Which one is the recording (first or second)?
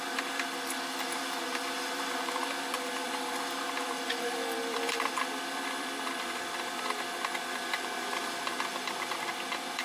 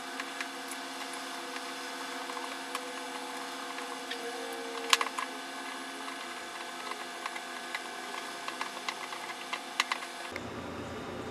second